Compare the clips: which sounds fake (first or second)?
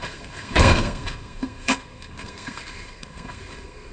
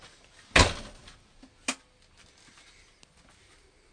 first